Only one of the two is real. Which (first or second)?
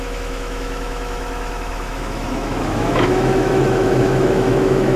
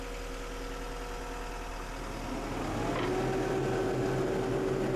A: second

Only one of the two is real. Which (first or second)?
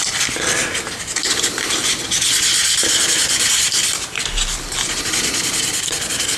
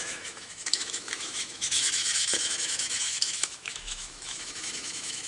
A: first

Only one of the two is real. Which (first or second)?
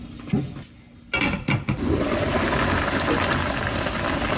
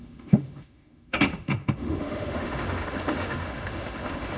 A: first